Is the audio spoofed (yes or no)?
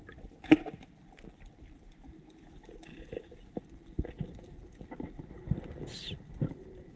no